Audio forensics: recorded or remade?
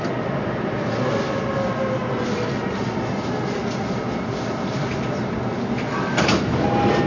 recorded